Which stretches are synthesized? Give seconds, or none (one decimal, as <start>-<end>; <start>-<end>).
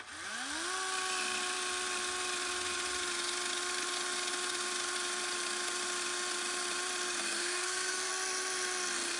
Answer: 7.4-8.1